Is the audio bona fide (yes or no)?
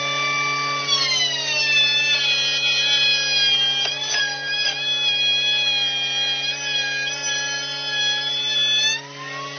yes